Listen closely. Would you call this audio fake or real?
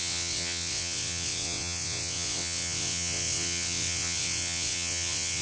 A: fake